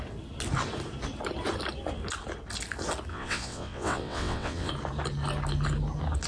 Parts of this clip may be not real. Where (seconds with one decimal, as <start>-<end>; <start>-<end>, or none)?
3.1-4.7